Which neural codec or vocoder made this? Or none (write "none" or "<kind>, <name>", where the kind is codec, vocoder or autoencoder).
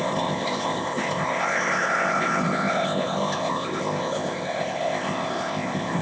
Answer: codec, ZipCodec